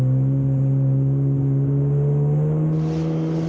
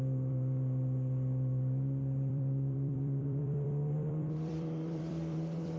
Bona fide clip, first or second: first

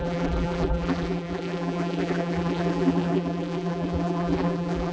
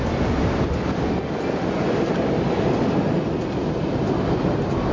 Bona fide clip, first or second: second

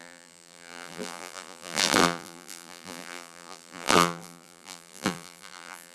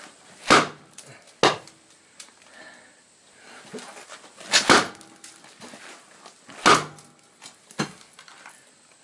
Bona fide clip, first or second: second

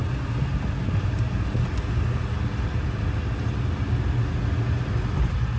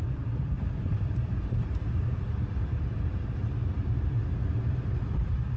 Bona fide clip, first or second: first